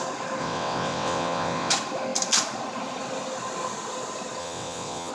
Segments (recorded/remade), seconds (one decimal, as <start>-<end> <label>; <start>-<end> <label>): 0.0-0.4 recorded; 0.4-1.7 remade; 1.7-4.4 recorded; 4.4-5.1 remade